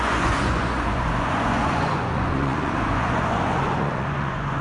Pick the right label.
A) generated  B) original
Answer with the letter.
A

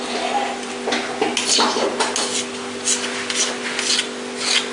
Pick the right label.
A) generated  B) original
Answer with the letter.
B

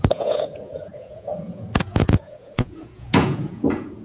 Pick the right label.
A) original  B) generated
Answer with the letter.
B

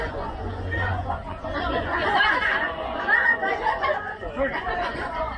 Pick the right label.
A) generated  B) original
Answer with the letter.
A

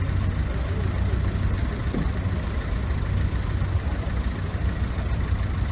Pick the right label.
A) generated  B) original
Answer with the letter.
B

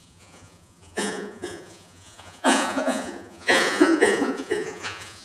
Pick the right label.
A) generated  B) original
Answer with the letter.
A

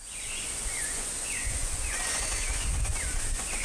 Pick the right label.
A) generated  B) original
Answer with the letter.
A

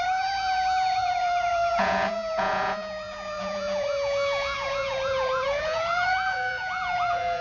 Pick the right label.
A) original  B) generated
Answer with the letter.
B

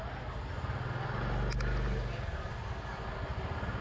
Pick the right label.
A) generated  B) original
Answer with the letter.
B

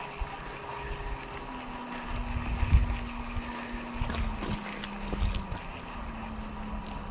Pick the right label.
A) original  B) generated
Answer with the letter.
A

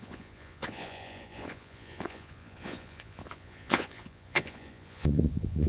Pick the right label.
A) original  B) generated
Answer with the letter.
B